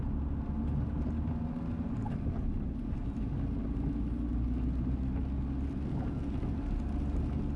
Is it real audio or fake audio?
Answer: real